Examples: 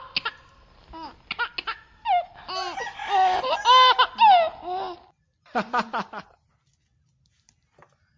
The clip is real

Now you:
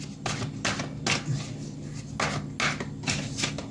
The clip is real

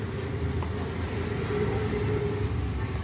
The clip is real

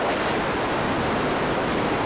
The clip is real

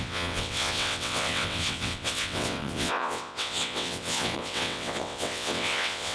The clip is fake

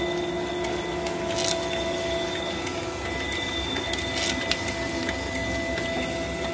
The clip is real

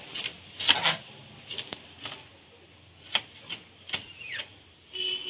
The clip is real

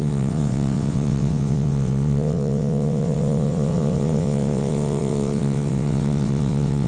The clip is fake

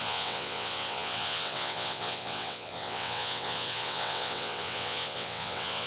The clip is fake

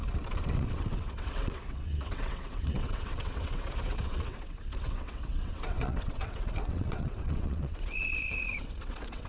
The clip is fake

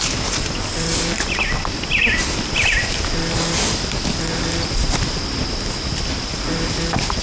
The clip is real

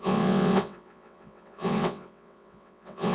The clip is fake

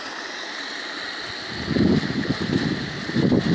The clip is real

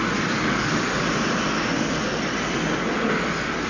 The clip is real